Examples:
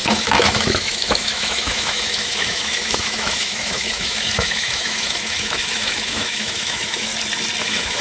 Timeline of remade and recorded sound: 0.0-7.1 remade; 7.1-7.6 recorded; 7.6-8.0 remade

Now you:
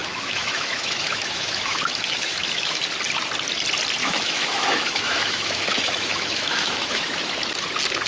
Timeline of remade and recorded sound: 0.0-2.8 remade; 2.8-4.0 recorded; 4.0-7.3 remade; 7.3-8.1 recorded

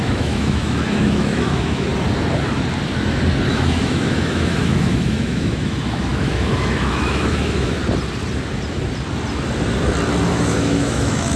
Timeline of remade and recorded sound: 0.0-1.9 remade; 1.9-3.5 recorded; 3.5-7.8 remade; 7.8-10.3 recorded; 10.3-11.4 remade

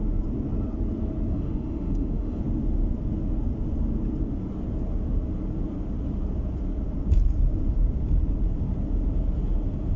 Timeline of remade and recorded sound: 0.0-1.3 recorded; 1.3-2.4 remade; 2.4-10.0 recorded

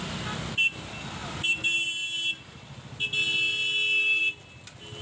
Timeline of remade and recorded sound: 0.0-5.0 recorded